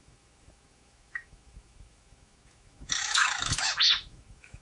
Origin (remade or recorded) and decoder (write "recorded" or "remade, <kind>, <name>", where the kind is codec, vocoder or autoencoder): remade, autoencoder, DAC-VAE